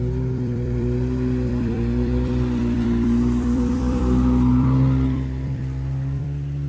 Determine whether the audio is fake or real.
fake